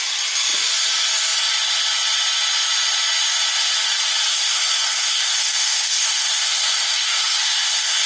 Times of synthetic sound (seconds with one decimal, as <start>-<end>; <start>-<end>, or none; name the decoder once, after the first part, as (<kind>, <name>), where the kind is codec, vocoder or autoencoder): 4.3-8.1 (codec, SNAC)